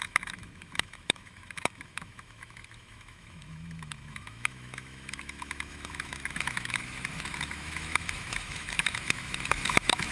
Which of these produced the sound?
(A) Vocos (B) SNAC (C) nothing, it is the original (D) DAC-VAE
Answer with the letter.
D